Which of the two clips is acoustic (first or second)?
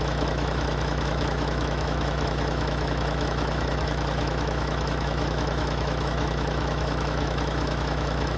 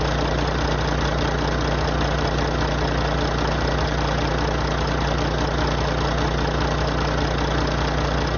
second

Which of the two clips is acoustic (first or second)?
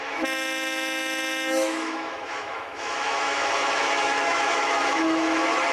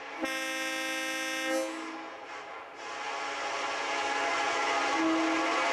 second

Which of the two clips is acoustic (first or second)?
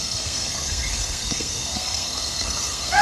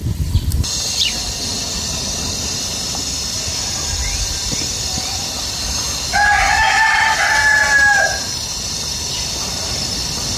second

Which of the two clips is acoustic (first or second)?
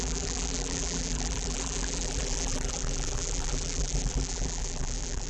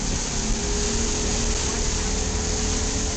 second